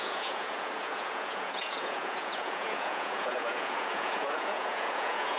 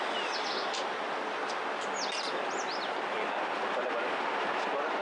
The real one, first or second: second